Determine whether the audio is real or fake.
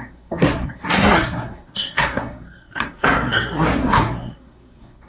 fake